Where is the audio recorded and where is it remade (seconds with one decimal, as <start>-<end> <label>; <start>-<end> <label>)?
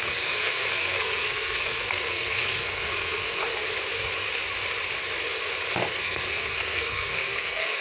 0.0-3.4 remade; 3.4-5.9 recorded; 5.9-7.8 remade